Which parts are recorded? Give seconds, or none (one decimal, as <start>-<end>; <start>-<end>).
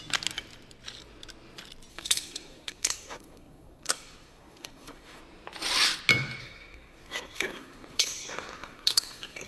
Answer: 0.0-1.9; 5.2-6.4